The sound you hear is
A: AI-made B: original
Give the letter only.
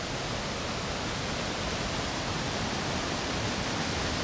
B